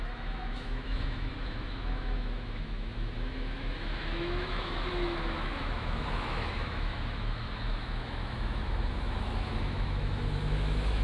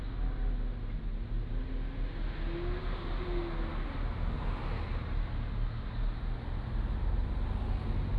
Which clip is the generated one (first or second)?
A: first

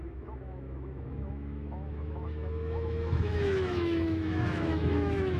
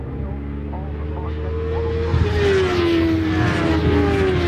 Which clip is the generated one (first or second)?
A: first